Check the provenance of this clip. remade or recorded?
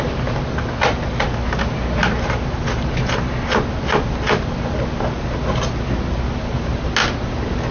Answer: recorded